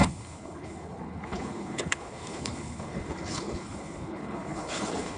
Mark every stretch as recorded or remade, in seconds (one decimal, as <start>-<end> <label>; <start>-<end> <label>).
0.0-5.2 remade